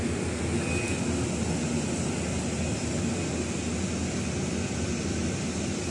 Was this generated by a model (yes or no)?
no